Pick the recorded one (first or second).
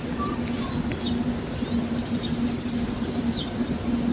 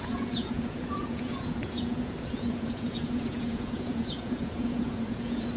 first